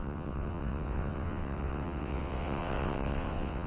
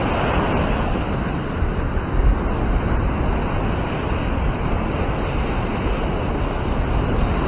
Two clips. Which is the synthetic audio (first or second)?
first